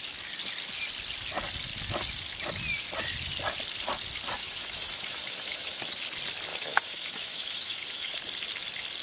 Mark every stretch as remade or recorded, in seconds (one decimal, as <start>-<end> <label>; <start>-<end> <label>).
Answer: 0.0-4.4 recorded; 4.4-5.9 remade; 5.9-6.5 recorded; 6.5-8.1 remade; 8.1-9.0 recorded